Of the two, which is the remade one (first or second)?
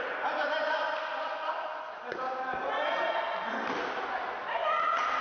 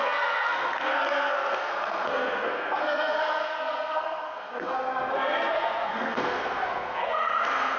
second